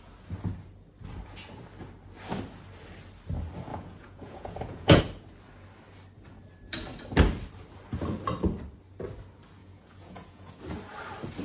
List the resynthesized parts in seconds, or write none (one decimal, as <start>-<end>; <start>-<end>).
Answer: 3.7-5.0; 9.6-10.6